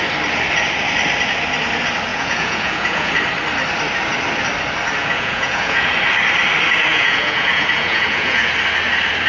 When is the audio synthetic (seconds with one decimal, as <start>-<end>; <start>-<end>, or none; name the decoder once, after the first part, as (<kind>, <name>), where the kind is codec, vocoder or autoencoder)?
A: 2.1-3.1 (vocoder, Vocos); 5.0-5.9; 6.9-8.5